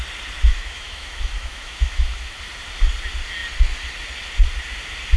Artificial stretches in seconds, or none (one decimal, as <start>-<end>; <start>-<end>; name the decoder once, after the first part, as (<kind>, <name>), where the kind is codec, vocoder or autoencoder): 0.5-2.4 (autoencoder, DAC-VAE)